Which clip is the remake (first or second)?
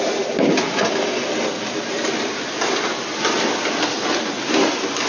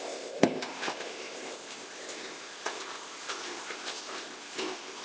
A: second